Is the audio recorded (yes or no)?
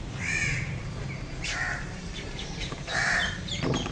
no